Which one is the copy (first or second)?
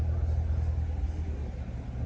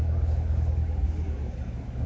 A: second